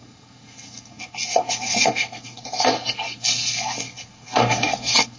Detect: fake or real fake